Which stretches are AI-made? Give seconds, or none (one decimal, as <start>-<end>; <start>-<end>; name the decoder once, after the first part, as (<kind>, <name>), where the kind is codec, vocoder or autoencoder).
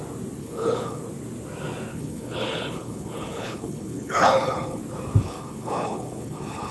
0.4-1.0 (codec, HILCodec); 1.9-4.8; 5.2-6.7